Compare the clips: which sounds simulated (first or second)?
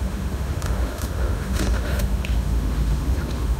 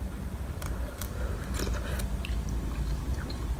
first